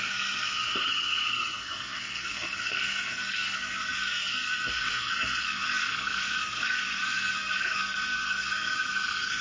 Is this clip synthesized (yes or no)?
yes